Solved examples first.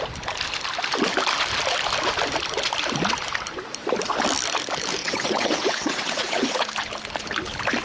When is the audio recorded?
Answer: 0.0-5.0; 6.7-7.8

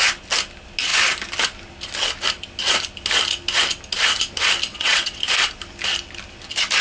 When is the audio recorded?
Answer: 0.0-4.7; 5.2-6.8

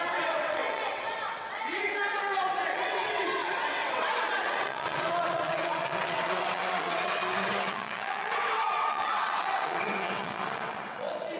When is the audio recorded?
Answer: none